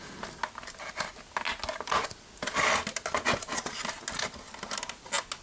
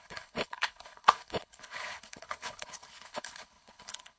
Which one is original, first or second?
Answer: first